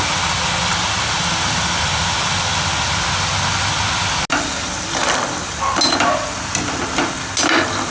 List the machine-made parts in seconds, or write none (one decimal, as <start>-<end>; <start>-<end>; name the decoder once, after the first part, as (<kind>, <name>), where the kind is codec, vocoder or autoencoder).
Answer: none